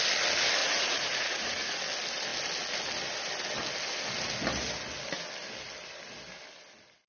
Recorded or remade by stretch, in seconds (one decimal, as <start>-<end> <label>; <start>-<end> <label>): 0.0-0.6 recorded; 0.6-1.8 remade; 1.8-7.1 recorded